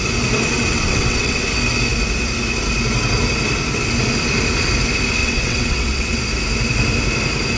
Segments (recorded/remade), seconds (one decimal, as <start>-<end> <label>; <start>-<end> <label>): 0.0-0.7 recorded; 0.7-1.4 remade; 1.4-5.2 recorded; 5.2-6.2 remade; 6.2-7.6 recorded